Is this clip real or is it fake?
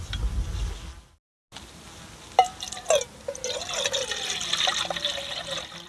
real